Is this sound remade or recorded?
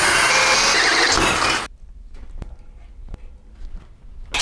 recorded